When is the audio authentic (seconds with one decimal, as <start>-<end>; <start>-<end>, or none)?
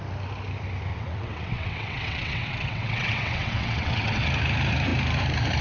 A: 0.0-0.9; 4.3-5.6